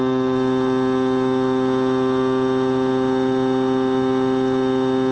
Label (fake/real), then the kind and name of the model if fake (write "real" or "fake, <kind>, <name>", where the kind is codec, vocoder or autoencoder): real